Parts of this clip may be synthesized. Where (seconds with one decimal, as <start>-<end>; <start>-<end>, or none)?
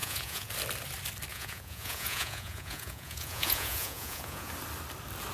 0.0-0.5; 1.3-4.5